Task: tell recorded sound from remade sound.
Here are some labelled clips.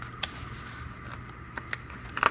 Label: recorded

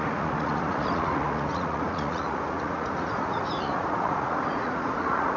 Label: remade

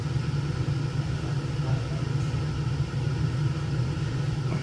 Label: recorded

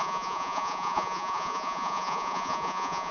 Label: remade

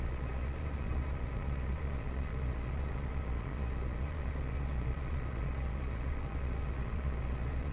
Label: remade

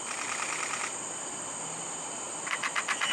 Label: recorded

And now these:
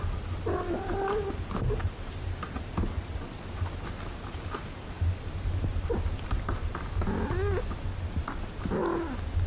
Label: recorded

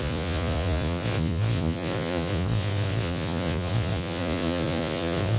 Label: remade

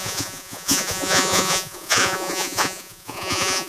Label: remade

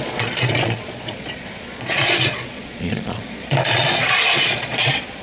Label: remade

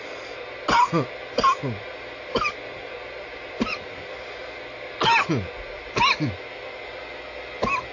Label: recorded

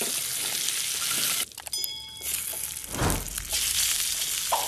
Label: recorded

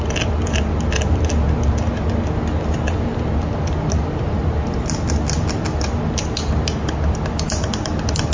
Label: recorded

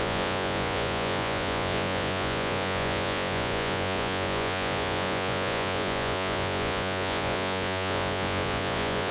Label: remade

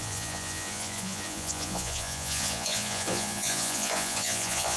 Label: remade